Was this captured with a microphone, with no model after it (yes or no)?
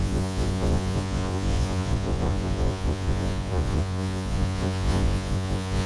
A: no